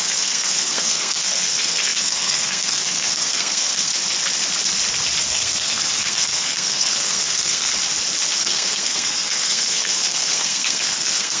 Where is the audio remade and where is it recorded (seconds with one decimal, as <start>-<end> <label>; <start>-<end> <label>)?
0.0-3.9 remade; 3.9-5.2 recorded; 5.2-7.7 remade; 7.7-8.4 recorded; 8.4-11.4 remade